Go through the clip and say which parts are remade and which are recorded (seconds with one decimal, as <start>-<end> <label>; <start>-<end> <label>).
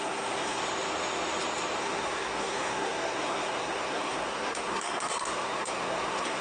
0.0-0.6 remade; 0.6-1.8 recorded; 1.8-6.4 remade